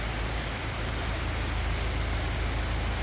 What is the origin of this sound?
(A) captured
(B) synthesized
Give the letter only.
A